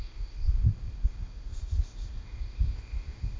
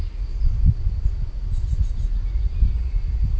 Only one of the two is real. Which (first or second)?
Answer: second